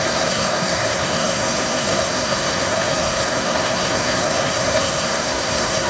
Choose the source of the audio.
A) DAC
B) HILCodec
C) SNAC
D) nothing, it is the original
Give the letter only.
C